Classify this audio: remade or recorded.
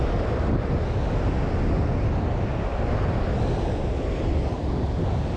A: recorded